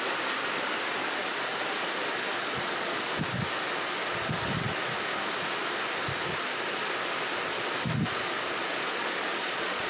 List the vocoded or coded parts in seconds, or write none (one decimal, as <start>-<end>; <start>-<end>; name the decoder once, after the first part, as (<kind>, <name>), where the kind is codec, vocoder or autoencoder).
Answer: 8.6-9.9 (vocoder, Vocos)